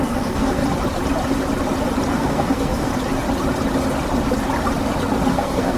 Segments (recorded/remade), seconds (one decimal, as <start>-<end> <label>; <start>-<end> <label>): 0.0-0.6 remade; 0.6-2.1 recorded; 2.1-2.9 remade; 2.9-5.3 recorded; 5.3-5.8 remade